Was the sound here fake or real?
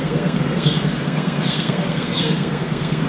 fake